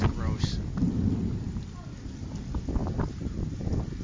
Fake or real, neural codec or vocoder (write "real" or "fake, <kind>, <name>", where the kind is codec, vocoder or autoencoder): real